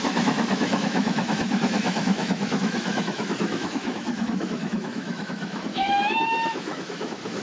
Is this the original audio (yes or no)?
no